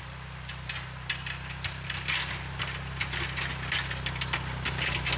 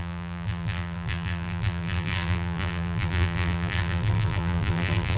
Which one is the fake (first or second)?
second